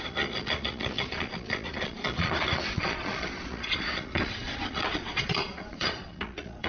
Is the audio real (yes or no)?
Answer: no